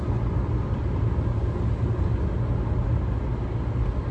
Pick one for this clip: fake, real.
real